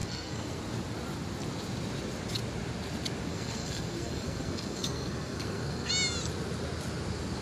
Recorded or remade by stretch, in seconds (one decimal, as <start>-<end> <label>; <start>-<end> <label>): 0.0-0.6 remade; 0.6-3.3 recorded; 3.3-5.9 remade; 5.9-7.4 recorded